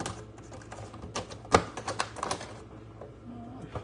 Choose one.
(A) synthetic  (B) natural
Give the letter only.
B